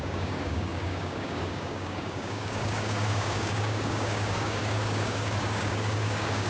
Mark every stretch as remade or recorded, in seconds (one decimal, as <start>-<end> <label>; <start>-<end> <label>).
0.0-6.5 remade